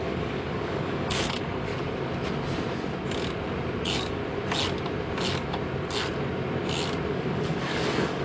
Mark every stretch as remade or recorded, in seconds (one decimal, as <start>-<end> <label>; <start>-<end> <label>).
0.0-1.7 remade; 1.7-3.8 recorded; 3.8-4.2 remade; 4.2-7.1 recorded; 7.1-8.2 remade